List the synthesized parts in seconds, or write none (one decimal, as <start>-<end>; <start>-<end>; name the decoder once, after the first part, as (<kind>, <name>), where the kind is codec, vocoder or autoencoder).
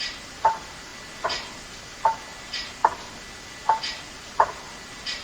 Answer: 0.0-0.9 (vocoder, BigVGAN v2); 1.8-2.8; 4.1-5.2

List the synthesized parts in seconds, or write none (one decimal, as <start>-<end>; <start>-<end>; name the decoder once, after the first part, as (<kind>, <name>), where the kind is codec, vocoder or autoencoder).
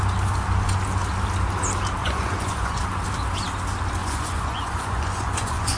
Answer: 2.0-2.8 (vocoder, Vocos); 4.0-5.8